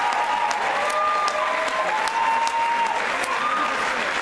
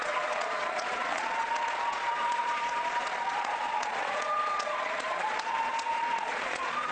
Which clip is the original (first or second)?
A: first